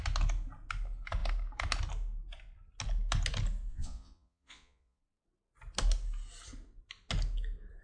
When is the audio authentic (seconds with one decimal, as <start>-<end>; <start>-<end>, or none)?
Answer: 0.0-3.7; 5.0-7.8